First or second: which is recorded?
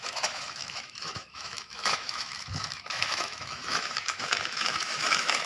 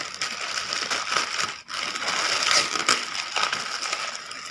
second